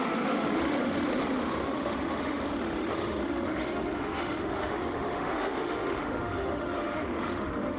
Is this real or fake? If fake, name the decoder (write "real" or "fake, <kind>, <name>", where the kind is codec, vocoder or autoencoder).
fake, autoencoder, DAC-VAE